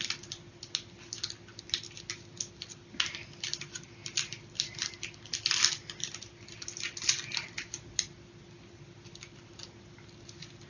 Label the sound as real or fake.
real